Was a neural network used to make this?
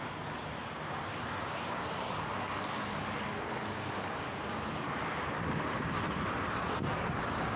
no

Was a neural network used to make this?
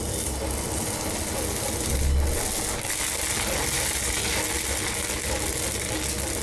no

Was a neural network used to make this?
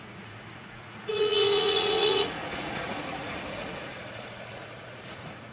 yes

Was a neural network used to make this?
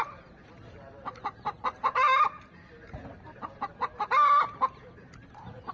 no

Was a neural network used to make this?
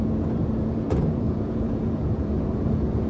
yes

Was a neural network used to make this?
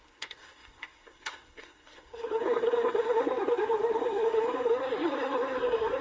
yes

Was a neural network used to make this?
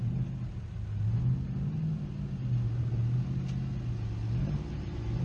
no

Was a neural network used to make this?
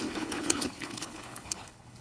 yes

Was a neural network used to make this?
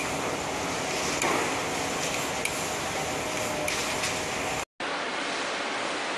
no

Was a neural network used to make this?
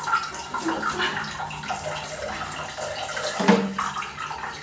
no